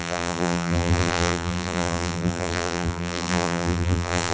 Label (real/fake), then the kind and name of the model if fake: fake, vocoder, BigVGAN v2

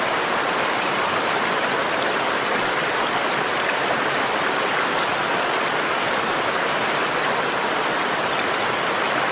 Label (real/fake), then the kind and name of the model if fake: fake, vocoder, BigVGAN v2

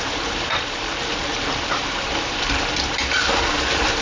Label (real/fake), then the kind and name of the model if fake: fake, vocoder, BigVGAN v2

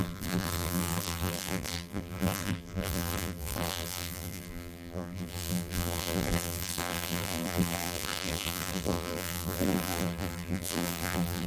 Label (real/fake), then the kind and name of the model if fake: fake, vocoder, BigVGAN v2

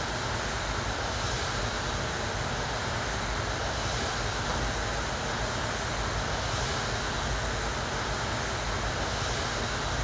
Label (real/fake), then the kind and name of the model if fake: real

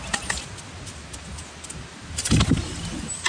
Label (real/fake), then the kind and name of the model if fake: real